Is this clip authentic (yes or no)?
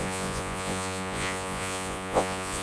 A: no